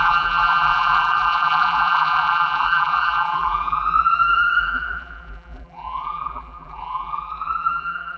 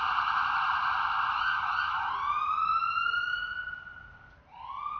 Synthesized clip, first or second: first